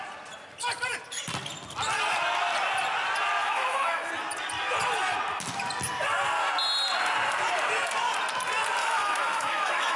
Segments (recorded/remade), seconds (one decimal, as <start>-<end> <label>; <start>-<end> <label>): 0.0-3.4 recorded; 3.4-4.1 remade; 4.1-8.8 recorded; 8.8-10.0 remade